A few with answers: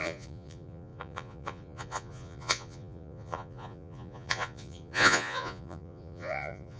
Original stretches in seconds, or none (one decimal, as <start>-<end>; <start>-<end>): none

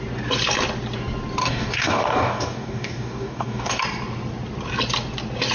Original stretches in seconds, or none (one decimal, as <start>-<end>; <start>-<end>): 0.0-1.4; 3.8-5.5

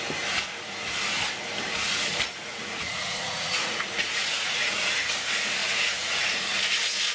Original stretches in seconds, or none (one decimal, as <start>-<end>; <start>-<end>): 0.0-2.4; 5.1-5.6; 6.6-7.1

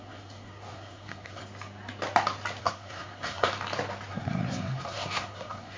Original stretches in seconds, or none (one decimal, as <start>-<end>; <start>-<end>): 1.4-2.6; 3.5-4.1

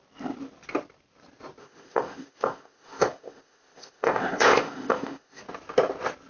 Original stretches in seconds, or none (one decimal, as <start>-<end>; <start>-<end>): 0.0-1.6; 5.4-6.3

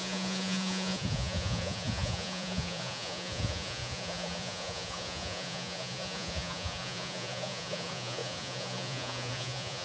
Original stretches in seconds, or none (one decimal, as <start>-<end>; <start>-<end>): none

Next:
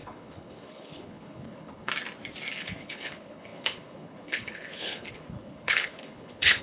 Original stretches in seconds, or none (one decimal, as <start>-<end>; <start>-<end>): 1.9-2.6